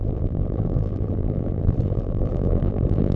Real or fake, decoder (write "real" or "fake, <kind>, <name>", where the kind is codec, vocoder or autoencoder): fake, vocoder, BigVGAN v2